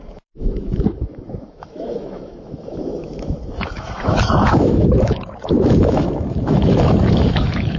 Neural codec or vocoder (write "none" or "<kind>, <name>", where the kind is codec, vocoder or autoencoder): autoencoder, DAC-VAE